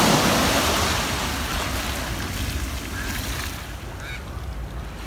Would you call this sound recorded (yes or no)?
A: yes